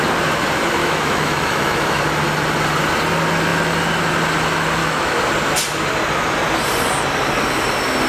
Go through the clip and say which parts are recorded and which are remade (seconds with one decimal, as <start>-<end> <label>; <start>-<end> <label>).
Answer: 0.0-0.8 recorded; 0.8-2.0 remade; 2.0-4.8 recorded; 4.8-5.3 remade; 5.3-8.1 recorded